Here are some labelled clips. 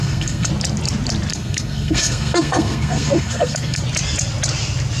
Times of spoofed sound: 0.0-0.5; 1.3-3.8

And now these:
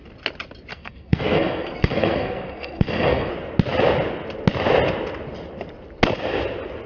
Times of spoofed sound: 0.7-3.3

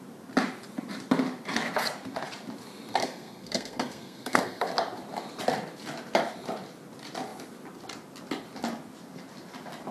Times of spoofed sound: 3.0-4.7

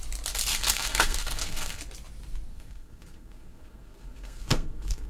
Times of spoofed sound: 0.5-1.8; 2.5-5.1

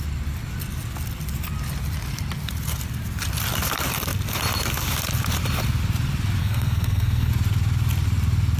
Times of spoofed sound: 6.4-7.3